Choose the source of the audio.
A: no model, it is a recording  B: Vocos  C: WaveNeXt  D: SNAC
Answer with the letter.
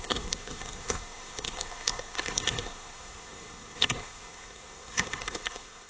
D